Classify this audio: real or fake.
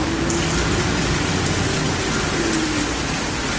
real